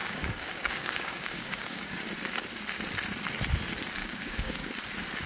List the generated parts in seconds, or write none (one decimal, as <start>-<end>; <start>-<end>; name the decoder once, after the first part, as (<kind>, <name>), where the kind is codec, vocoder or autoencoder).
0.0-2.1 (codec, DAC); 4.0-4.7

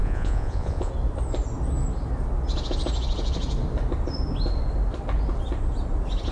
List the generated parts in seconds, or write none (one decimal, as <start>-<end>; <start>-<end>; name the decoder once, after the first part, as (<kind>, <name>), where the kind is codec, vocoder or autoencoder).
0.0-0.9 (vocoder, Vocos)